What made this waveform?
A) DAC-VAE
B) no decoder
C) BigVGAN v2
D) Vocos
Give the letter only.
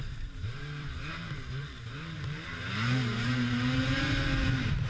C